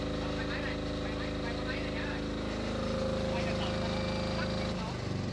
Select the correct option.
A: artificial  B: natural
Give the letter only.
B